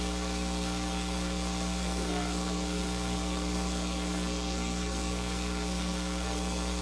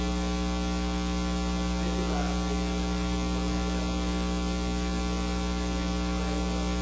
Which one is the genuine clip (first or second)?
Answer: second